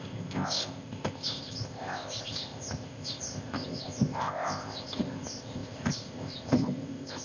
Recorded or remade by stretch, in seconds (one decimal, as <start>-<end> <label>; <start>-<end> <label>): 0.0-7.2 remade